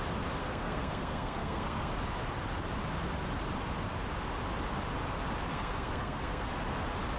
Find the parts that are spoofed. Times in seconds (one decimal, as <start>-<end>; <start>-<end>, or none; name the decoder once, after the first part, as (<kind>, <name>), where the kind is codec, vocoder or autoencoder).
0.4-1.9 (codec, SNAC); 5.5-6.5